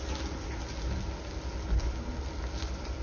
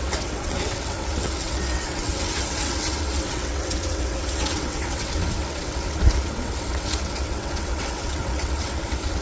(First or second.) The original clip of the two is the first